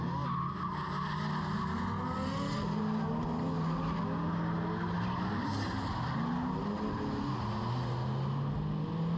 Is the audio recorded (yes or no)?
yes